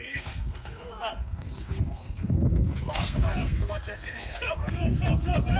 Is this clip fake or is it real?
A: fake